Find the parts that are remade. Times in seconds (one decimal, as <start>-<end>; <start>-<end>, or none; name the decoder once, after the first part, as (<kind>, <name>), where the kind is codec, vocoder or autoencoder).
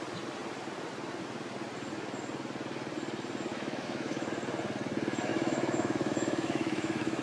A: 3.5-4.3 (autoencoder, DAC-VAE); 5.3-7.2